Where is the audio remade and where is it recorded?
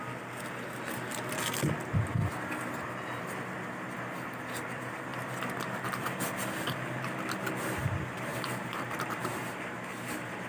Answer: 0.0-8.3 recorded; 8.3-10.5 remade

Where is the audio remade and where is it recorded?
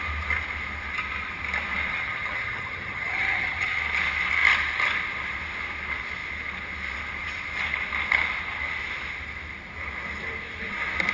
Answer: 0.0-1.9 recorded; 1.9-3.8 remade; 3.8-11.1 recorded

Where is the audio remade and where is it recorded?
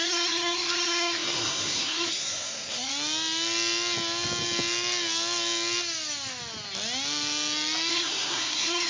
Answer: 0.0-2.9 remade; 2.9-7.9 recorded; 7.9-8.9 remade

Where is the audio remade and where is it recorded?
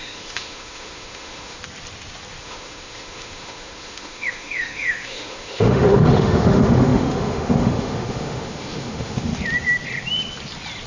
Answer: 0.0-1.6 remade; 1.6-2.4 recorded; 2.4-9.3 remade; 9.3-10.9 recorded